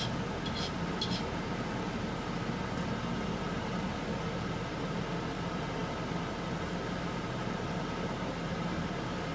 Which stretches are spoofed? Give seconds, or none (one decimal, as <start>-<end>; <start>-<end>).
none